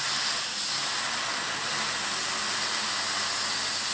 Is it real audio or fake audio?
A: real